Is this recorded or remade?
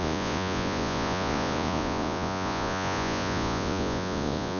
remade